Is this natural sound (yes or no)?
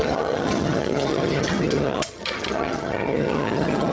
no